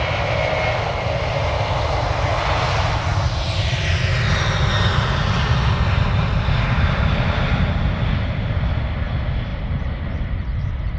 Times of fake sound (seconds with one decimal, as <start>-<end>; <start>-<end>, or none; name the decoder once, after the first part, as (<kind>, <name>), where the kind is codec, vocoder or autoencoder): none